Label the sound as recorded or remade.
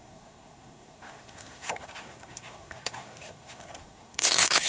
remade